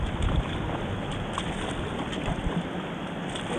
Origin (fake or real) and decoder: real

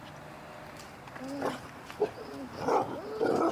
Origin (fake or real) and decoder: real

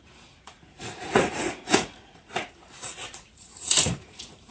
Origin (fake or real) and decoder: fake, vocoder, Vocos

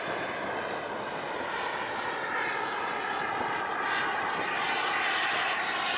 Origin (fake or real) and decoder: real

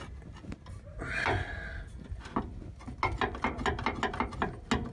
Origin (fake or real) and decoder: real